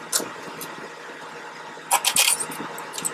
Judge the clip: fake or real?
real